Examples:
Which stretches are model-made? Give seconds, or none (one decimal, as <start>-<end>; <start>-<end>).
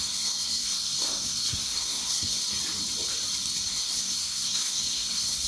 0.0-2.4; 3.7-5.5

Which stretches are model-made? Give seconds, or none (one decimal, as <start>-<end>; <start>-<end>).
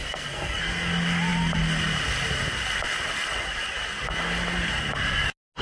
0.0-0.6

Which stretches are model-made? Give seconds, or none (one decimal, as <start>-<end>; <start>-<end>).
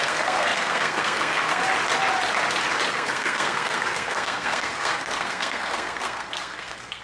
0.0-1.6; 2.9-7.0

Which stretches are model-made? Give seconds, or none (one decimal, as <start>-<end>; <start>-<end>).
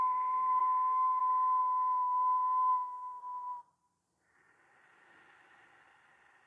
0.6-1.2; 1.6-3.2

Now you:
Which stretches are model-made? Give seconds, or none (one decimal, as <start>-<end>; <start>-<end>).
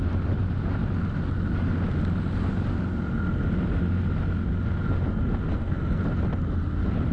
5.5-6.0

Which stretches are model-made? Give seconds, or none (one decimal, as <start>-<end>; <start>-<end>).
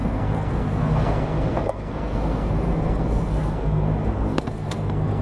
0.0-5.2